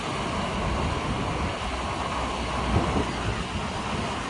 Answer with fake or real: real